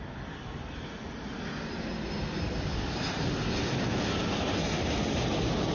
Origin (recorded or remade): recorded